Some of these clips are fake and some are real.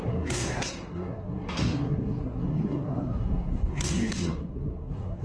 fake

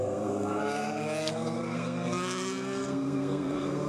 fake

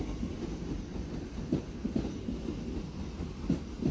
real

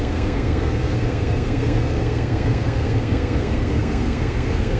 fake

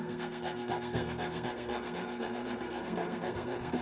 fake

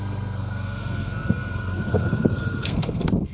fake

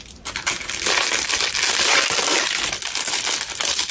real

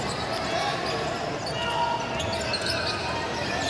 real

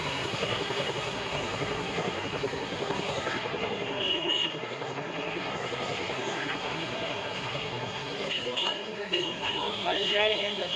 fake